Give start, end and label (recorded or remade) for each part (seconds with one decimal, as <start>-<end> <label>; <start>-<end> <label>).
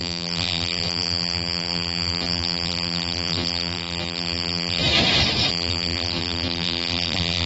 0.0-4.8 remade; 4.8-5.5 recorded; 5.5-7.5 remade